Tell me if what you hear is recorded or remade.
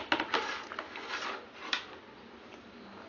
recorded